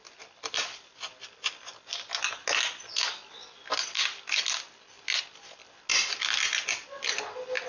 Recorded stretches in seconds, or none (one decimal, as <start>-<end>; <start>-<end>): 0.0-7.7